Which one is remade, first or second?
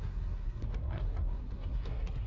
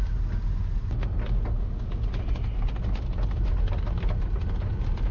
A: first